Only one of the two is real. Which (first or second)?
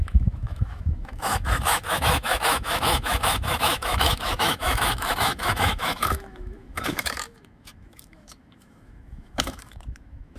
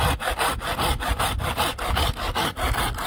second